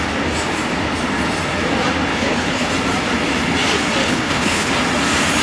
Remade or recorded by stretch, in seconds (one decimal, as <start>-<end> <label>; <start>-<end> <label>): 0.0-2.1 recorded; 2.1-2.7 remade; 2.7-4.0 recorded; 4.0-4.7 remade; 4.7-5.4 recorded